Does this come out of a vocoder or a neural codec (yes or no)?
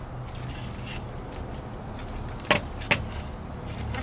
no